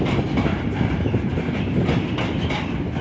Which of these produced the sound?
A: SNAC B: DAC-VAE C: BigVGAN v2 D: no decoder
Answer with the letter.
D